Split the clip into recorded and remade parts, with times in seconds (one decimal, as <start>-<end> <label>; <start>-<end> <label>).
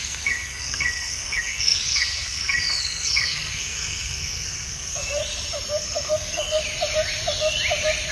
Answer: 0.0-5.2 remade; 5.2-5.8 recorded; 5.8-6.6 remade; 6.6-8.1 recorded